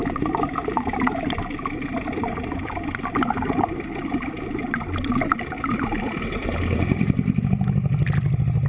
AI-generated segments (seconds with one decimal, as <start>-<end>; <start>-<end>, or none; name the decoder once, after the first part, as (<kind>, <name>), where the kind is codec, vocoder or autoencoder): 0.0-1.0 (vocoder, BigVGAN v2); 2.2-2.9